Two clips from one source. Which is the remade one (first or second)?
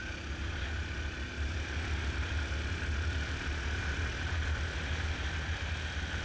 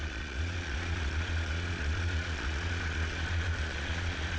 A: second